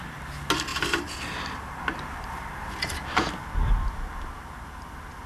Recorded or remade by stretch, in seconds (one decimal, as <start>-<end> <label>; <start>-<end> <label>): 0.0-5.3 recorded